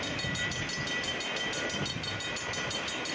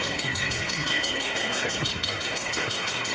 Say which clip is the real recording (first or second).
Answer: first